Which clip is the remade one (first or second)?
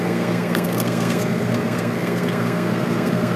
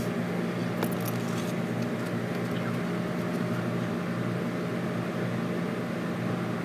first